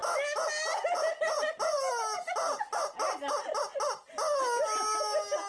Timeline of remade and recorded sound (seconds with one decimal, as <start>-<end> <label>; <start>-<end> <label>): 0.0-5.5 recorded